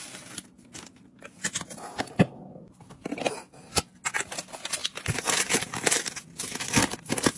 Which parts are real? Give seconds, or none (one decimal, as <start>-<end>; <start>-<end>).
0.0-4.8; 6.1-7.4